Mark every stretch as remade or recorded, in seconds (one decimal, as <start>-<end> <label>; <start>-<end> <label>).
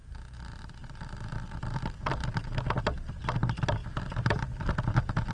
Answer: 0.0-5.3 recorded